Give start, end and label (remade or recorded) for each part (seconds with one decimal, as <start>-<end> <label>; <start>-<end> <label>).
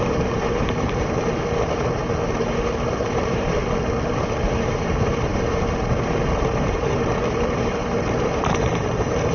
0.0-3.6 remade; 3.6-4.1 recorded; 4.1-9.3 remade